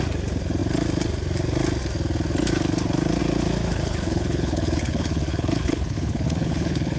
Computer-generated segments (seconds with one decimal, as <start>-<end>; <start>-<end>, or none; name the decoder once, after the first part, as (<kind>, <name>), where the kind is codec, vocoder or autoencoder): 3.7-7.0 (codec, HILCodec)